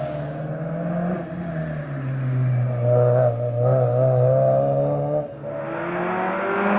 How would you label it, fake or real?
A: real